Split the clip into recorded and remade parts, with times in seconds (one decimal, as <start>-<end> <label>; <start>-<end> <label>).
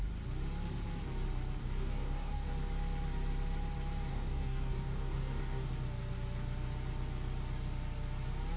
0.0-1.6 recorded; 1.6-2.5 remade; 2.5-4.1 recorded; 4.1-5.7 remade; 5.7-8.6 recorded